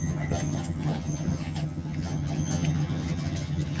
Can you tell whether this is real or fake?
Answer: fake